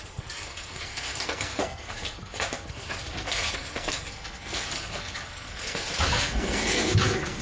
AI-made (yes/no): yes